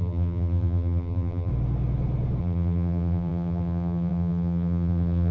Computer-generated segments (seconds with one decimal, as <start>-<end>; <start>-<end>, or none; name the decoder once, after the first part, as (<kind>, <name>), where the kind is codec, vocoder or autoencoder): 0.0-1.5 (vocoder, BigVGAN v2); 2.4-5.3